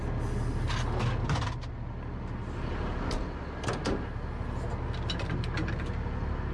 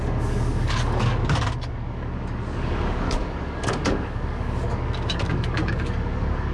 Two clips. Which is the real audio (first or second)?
first